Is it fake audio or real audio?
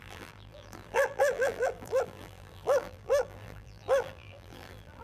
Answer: fake